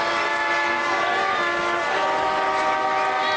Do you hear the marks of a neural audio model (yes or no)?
no